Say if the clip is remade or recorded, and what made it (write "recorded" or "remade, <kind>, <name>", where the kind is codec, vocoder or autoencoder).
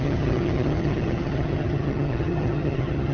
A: remade, vocoder, HiFi-GAN